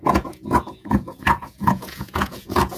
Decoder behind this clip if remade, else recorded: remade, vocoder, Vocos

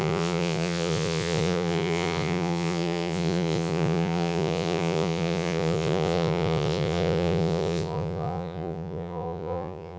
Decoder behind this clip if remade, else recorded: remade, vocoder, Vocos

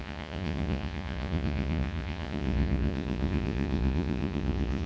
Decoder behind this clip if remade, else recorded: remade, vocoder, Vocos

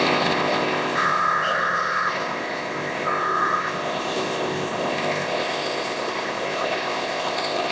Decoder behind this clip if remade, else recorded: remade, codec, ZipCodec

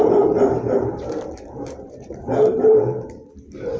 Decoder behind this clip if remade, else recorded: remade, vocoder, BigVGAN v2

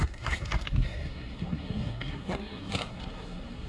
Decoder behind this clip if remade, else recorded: remade, codec, SNAC